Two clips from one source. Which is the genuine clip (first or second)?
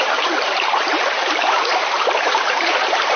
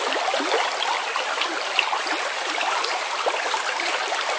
second